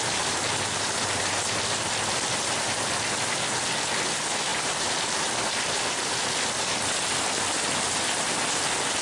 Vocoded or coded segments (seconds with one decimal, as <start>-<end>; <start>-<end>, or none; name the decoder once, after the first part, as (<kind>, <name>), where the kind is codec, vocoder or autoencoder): 4.5-8.3 (vocoder, BigVGAN v2)